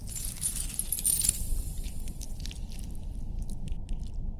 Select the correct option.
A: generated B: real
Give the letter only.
B